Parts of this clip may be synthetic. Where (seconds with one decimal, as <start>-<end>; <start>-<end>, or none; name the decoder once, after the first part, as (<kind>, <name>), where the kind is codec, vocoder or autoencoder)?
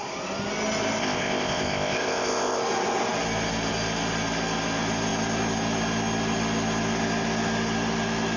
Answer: 1.0-2.6 (codec, ZipCodec)